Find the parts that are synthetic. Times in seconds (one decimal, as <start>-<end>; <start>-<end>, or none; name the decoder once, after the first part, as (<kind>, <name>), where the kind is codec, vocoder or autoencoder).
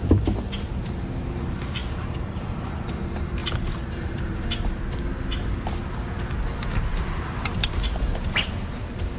1.8-2.8 (vocoder, BigVGAN v2); 3.4-4.4; 6.9-8.6